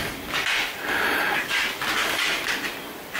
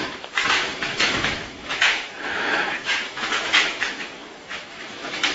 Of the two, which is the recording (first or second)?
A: first